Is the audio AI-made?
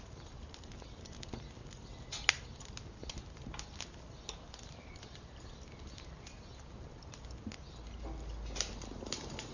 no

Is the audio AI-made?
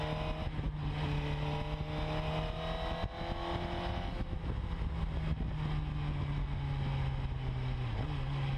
no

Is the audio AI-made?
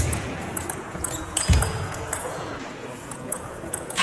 yes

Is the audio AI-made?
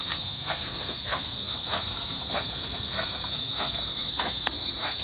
yes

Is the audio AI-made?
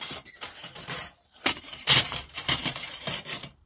yes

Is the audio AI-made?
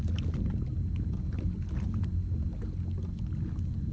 no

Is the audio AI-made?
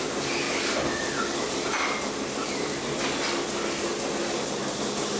no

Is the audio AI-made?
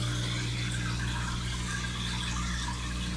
no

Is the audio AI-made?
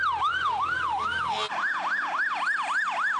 no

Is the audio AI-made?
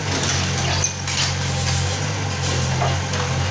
no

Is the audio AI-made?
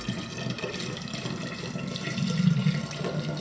no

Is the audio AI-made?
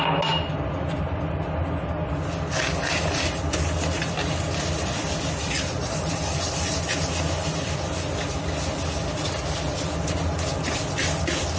no